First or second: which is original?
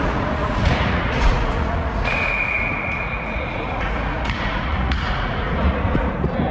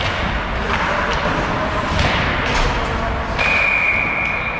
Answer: second